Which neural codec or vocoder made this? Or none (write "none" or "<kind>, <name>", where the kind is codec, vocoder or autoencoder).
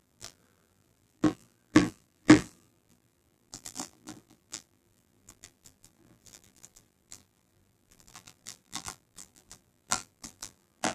vocoder, BigVGAN v2